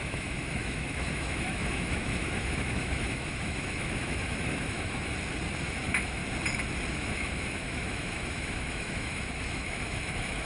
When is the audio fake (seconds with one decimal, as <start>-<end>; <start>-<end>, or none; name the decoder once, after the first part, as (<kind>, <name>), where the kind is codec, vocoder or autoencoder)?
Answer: 0.0-5.1 (autoencoder, DAC-VAE); 5.6-6.2; 6.9-10.5